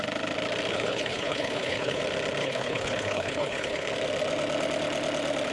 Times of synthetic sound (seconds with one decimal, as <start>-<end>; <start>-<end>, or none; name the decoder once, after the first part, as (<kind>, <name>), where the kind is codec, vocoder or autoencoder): 0.7-2.0 (codec, HILCodec); 2.4-3.9